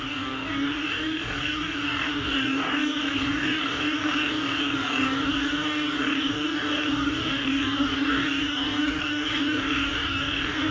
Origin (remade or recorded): remade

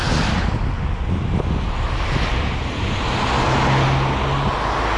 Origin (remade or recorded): recorded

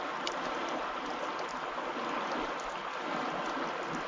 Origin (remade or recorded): recorded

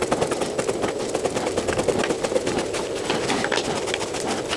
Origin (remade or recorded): recorded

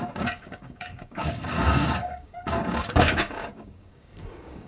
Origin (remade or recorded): remade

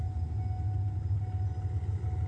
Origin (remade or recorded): recorded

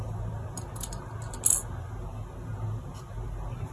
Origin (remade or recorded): recorded